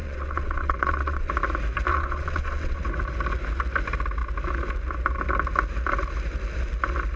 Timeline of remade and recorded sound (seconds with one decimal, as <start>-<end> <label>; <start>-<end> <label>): 0.0-1.3 remade; 1.3-1.9 recorded; 1.9-2.8 remade; 2.8-7.2 recorded